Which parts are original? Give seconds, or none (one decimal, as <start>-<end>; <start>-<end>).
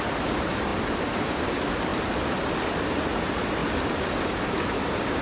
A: 1.9-2.8; 3.6-4.2